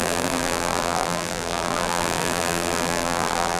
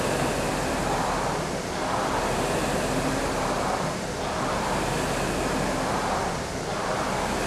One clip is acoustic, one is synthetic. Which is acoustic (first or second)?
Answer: second